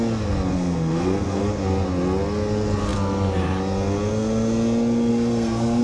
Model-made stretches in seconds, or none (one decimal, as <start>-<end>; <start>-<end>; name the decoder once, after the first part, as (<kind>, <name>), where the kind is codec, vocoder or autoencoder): 0.5-1.4 (codec, SNAC); 5.1-5.8